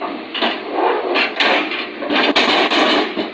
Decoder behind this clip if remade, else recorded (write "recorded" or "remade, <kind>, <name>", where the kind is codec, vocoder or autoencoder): recorded